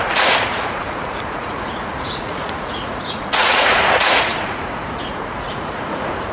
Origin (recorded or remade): remade